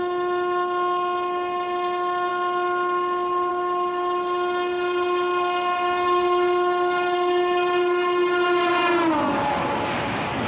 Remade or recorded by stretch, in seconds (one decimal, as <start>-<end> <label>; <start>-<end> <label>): 0.0-10.5 recorded